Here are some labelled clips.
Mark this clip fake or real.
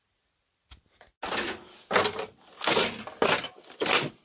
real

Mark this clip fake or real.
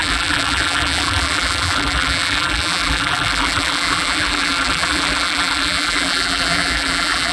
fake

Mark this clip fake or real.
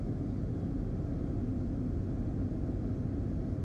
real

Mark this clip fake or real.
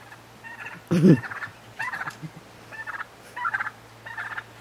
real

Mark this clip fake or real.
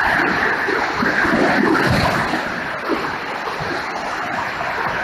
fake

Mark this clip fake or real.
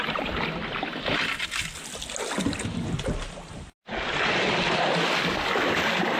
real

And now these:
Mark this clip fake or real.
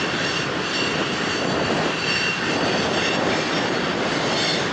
real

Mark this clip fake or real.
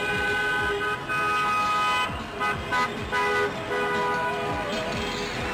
real